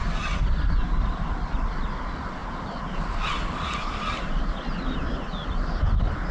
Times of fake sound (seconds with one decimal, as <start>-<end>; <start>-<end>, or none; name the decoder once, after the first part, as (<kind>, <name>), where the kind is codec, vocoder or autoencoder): none